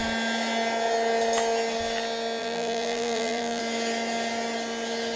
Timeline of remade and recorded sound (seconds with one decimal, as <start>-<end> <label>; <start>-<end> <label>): 0.0-2.4 recorded; 2.4-3.6 remade; 3.6-5.2 recorded